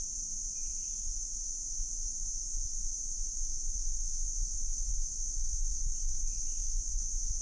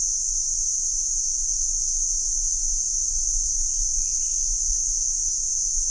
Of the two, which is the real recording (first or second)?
second